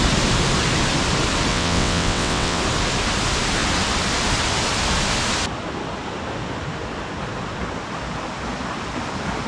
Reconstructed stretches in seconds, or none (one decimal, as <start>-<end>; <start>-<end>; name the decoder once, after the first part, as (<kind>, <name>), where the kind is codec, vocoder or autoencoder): 1.5-2.6 (vocoder, WaveNeXt)